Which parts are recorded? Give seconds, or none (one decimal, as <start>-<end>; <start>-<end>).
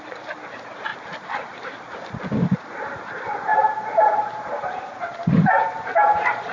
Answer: 0.0-3.5; 5.6-6.5